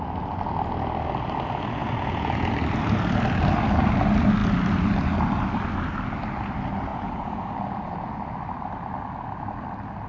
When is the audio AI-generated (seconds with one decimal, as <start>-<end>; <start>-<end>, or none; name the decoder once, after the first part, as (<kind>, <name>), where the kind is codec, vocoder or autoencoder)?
1.8-2.5 (vocoder, Vocos); 6.9-7.5